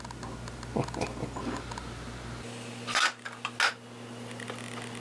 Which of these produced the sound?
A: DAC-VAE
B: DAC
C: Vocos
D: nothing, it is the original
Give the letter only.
D